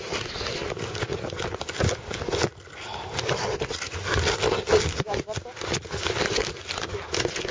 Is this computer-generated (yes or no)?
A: no